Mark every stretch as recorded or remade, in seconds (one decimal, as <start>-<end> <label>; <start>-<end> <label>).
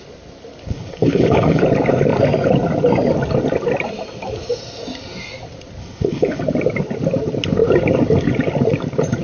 0.0-0.7 recorded; 0.7-1.6 remade; 1.6-5.8 recorded; 5.8-6.4 remade; 6.4-9.2 recorded